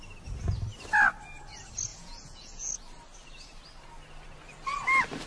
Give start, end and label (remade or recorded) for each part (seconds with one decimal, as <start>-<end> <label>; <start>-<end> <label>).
0.0-1.9 recorded; 1.9-2.7 remade; 2.7-5.3 recorded